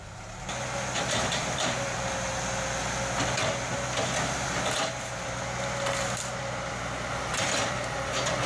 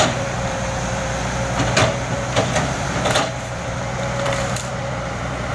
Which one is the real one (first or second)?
first